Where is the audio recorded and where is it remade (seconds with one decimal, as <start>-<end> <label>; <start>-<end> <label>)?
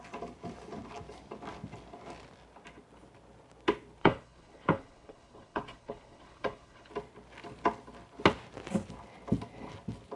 0.0-4.0 recorded; 4.0-6.9 remade; 6.9-10.2 recorded